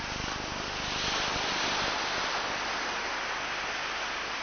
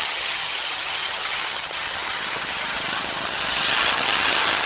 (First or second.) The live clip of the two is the first